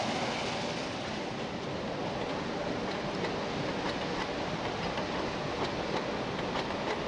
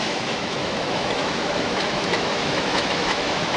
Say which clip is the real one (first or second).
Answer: first